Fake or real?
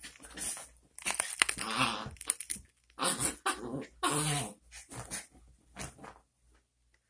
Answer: real